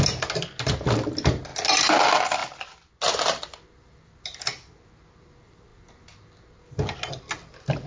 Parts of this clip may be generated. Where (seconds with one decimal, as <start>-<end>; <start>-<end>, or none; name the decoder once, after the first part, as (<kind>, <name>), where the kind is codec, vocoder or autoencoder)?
none